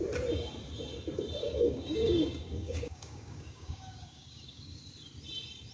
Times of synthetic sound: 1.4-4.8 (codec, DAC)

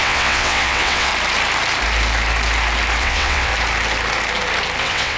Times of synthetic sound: 0.0-1.1 (vocoder, WaveNeXt); 3.0-3.5; 4.8-5.2